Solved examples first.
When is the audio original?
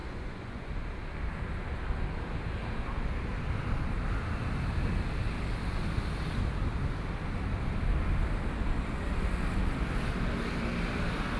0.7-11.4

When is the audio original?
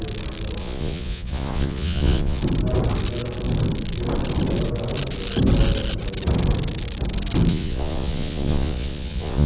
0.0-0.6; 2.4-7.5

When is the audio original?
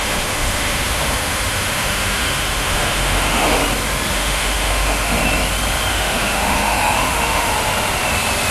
3.6-4.1; 5.2-5.9; 7.5-8.5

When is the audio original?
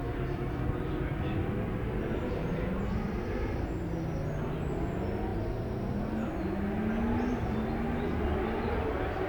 0.0-9.3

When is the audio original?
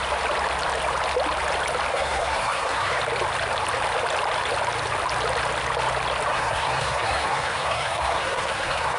0.0-1.9; 3.0-6.3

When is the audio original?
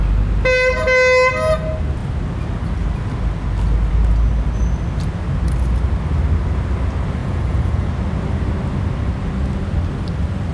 0.0-7.2; 7.9-10.5